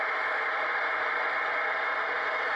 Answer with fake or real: real